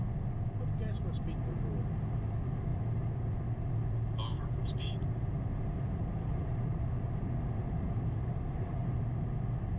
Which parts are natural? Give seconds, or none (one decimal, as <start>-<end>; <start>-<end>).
0.0-2.7; 3.7-4.3; 9.0-9.8